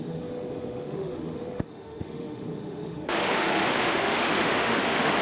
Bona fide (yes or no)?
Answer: no